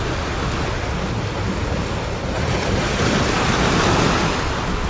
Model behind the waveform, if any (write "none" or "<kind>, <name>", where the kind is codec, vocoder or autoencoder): none